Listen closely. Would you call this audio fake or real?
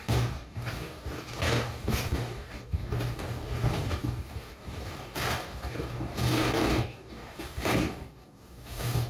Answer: fake